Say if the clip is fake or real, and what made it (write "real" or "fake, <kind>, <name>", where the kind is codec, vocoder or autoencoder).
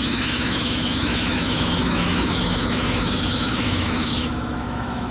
fake, autoencoder, DAC-VAE